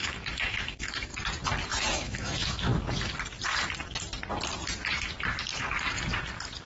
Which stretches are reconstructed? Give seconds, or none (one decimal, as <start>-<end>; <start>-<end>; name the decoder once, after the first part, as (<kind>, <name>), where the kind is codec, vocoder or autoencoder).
0.0-1.1 (autoencoder, DAC-VAE); 1.7-2.7